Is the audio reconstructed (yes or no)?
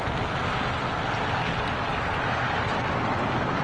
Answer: no